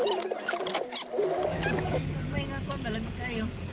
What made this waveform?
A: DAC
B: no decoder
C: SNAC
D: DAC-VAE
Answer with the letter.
B